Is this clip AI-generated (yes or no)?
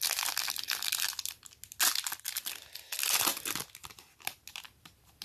no